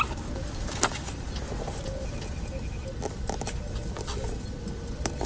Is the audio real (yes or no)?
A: yes